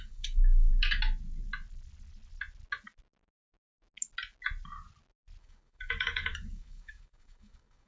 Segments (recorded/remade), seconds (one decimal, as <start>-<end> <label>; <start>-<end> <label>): 0.0-0.7 remade; 0.7-5.4 recorded; 5.4-7.9 remade

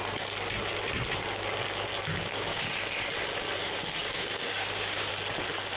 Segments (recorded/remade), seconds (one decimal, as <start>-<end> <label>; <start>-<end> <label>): 0.0-2.1 recorded; 2.1-2.6 remade; 2.6-4.0 recorded; 4.0-5.1 remade; 5.1-5.8 recorded

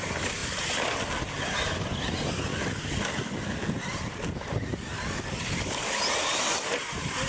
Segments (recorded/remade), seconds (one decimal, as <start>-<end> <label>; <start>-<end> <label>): 0.0-7.3 recorded

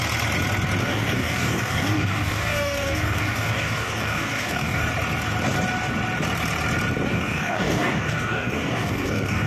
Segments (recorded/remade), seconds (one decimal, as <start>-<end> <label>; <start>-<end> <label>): 0.0-0.8 recorded; 0.8-4.9 remade; 4.9-7.1 recorded; 7.1-9.5 remade

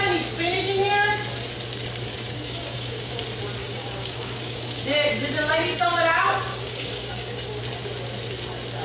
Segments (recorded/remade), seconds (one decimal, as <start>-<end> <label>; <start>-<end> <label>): 0.0-2.1 recorded; 2.1-3.1 remade; 3.1-3.6 recorded; 3.6-4.8 remade; 4.8-6.5 recorded; 6.5-7.6 remade; 7.6-8.8 recorded